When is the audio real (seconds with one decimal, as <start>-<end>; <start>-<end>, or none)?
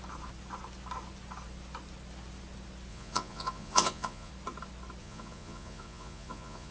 0.0-2.9; 4.3-5.0